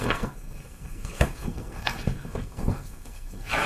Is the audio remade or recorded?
remade